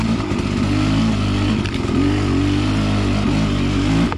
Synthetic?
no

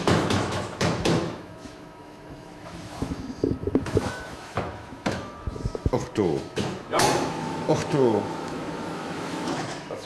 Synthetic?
yes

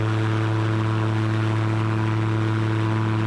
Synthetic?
no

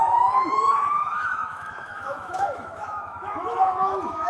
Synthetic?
yes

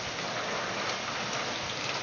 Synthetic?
no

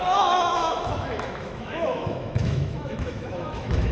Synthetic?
yes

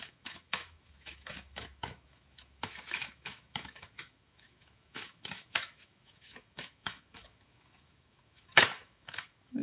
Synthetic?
yes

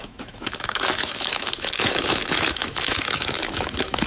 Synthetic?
yes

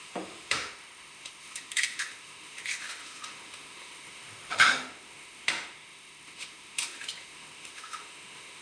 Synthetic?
yes